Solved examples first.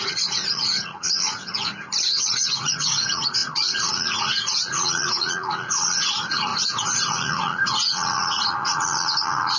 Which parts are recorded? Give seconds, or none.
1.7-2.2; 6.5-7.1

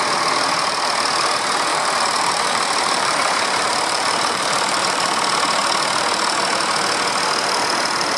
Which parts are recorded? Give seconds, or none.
0.0-1.7; 5.1-8.2

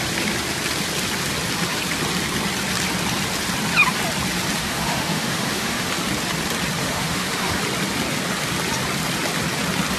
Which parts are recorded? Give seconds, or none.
0.0-4.6; 5.9-6.8; 7.6-10.0

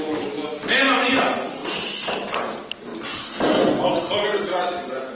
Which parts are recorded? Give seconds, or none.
0.0-5.1

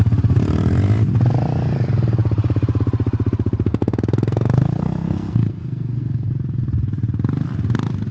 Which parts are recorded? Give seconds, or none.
0.0-3.7; 6.3-8.1